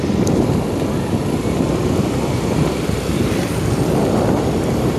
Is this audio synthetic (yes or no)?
no